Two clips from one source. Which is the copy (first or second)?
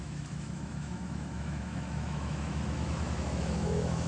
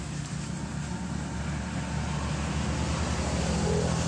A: first